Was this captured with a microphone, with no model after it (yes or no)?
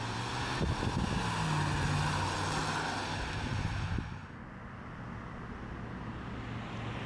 yes